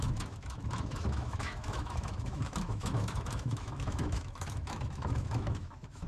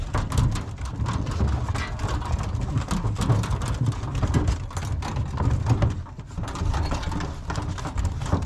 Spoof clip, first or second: first